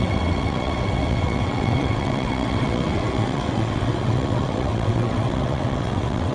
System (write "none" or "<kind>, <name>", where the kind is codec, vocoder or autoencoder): vocoder, WaveNeXt